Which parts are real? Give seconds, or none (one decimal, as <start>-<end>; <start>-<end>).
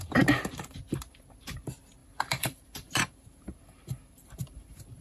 0.0-2.0